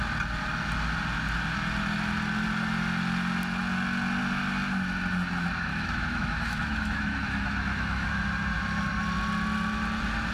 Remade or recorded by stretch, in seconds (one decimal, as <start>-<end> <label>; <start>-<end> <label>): 0.0-5.7 recorded; 5.7-8.1 remade; 8.1-10.3 recorded